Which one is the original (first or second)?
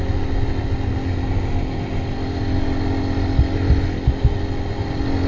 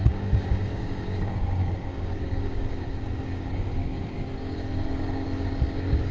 first